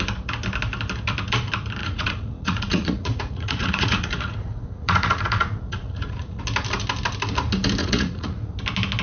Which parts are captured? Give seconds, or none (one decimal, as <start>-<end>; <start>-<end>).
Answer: 0.0-1.8; 6.4-7.8; 8.5-9.0